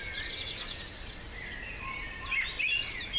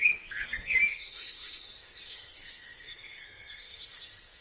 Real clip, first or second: first